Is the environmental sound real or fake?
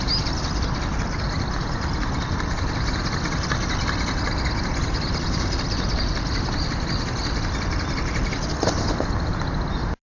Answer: real